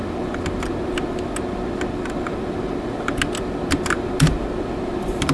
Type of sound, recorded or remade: recorded